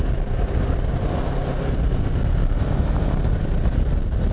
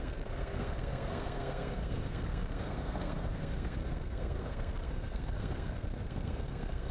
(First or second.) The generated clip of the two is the second